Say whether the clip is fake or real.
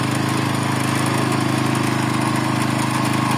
real